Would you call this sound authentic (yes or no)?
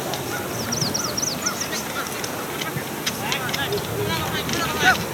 yes